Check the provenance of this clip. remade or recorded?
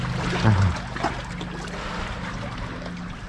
recorded